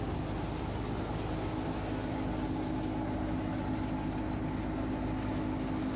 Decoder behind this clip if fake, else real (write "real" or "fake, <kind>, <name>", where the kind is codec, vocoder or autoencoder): real